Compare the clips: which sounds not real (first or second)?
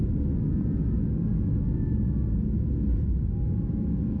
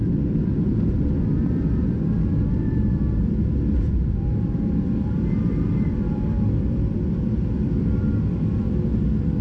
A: second